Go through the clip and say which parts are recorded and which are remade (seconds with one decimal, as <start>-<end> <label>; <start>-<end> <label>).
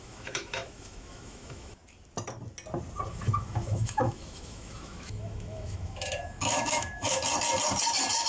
0.0-1.8 remade; 1.8-3.1 recorded; 3.1-7.2 remade; 7.2-8.3 recorded